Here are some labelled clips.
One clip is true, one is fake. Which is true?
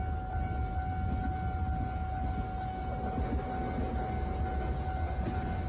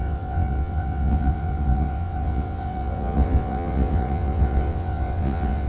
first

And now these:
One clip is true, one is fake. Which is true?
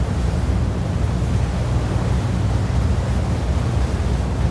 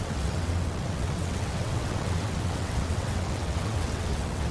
first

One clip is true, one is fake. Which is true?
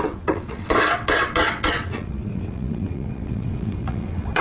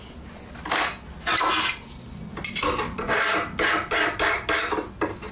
second